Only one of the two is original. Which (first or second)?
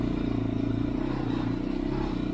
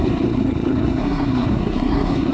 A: first